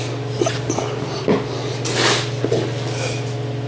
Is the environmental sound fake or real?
real